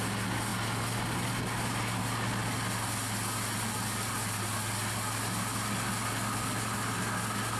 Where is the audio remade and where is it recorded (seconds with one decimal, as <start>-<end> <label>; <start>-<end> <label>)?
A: 0.0-7.6 recorded